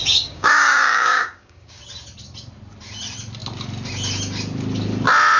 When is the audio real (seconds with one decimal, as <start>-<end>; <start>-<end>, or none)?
1.8-5.4